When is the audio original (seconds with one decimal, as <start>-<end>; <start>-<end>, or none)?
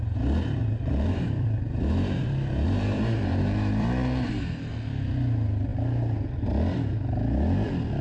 0.0-0.6; 4.7-8.0